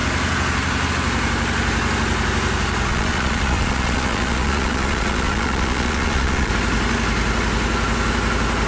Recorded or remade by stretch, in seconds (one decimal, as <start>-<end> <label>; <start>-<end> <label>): 0.0-2.9 recorded; 2.9-6.5 remade; 6.5-8.7 recorded